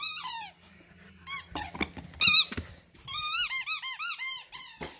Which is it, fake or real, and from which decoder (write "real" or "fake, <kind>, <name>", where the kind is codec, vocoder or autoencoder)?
real